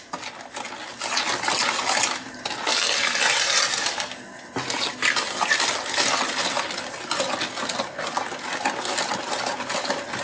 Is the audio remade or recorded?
recorded